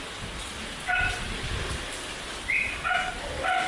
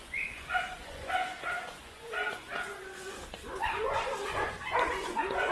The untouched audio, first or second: first